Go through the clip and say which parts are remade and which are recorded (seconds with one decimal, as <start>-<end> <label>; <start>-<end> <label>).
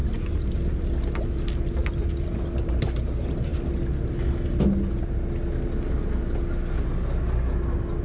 0.0-8.0 recorded